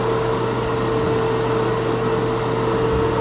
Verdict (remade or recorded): recorded